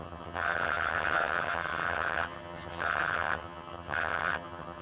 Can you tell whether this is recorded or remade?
remade